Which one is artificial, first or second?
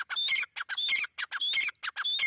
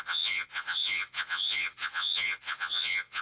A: second